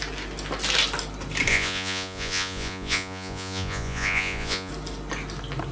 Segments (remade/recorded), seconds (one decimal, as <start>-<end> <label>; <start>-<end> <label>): 0.0-1.5 recorded; 1.5-4.7 remade; 4.7-5.7 recorded